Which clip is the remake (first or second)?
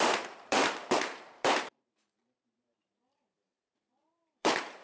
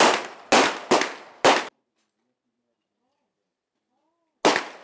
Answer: first